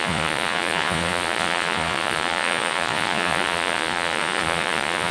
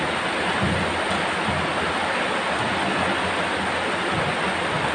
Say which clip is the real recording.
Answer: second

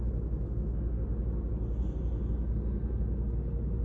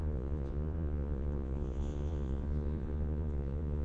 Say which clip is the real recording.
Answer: first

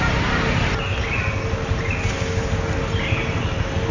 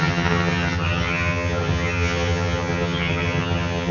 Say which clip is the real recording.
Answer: first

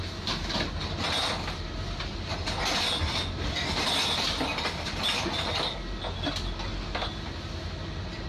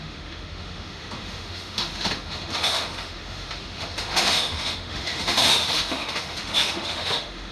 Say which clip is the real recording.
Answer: first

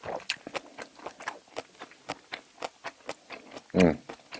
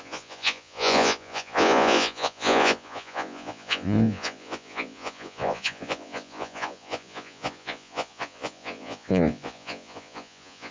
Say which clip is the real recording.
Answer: first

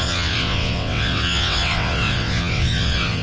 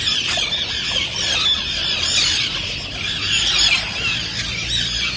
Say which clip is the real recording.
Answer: second